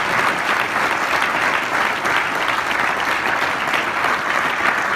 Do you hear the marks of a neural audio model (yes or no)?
no